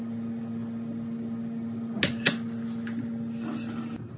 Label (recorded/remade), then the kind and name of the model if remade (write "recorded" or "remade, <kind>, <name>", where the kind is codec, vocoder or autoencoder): recorded